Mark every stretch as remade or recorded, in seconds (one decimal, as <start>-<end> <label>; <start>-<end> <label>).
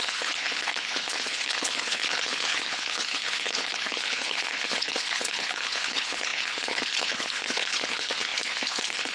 0.0-9.1 remade